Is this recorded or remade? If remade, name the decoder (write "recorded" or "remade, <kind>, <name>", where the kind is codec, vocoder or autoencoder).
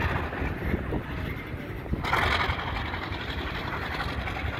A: recorded